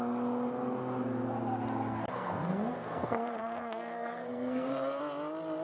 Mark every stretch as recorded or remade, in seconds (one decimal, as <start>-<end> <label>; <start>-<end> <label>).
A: 0.0-1.9 recorded; 1.9-5.0 remade; 5.0-5.6 recorded

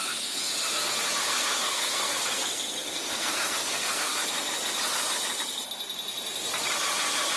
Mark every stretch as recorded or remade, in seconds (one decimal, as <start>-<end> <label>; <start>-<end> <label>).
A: 0.0-0.5 remade; 0.5-1.2 recorded; 1.2-4.1 remade; 4.1-7.4 recorded